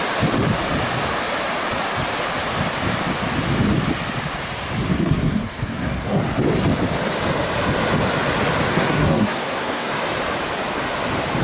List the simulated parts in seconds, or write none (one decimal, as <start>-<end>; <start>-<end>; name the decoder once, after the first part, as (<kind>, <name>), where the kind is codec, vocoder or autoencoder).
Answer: 4.9-6.2 (codec, SNAC); 8.7-9.9